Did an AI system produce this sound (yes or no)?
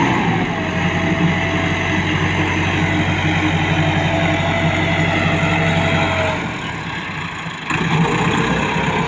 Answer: no